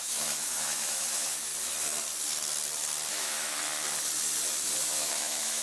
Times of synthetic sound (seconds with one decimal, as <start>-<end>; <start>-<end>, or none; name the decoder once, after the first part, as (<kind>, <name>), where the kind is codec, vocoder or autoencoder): 0.0-1.5 (autoencoder, DAC-VAE); 3.1-3.6; 4.8-5.6